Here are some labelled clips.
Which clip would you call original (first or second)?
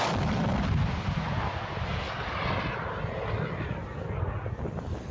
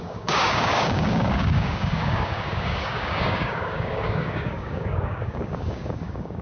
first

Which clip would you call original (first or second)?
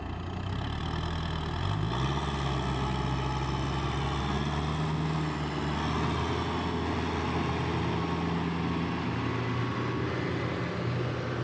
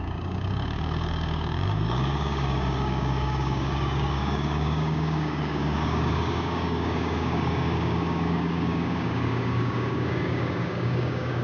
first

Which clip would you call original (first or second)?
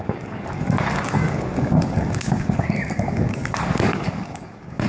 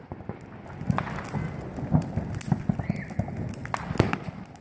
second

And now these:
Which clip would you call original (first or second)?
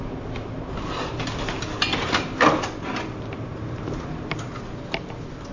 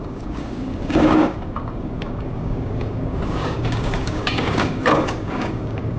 first